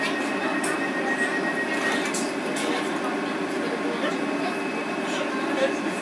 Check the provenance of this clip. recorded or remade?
recorded